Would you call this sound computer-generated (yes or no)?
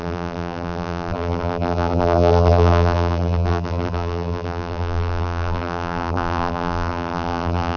yes